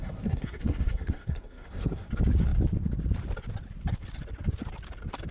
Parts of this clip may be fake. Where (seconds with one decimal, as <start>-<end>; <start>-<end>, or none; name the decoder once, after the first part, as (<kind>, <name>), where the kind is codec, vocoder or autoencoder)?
0.0-2.1 (codec, SNAC)